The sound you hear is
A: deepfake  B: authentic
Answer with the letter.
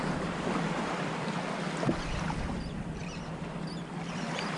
A